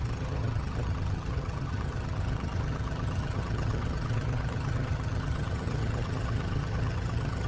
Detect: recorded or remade remade